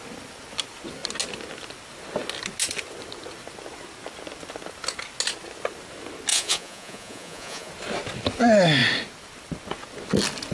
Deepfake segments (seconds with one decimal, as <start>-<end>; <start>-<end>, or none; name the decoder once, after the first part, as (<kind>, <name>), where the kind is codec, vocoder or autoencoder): 6.3-7.7 (vocoder, Vocos)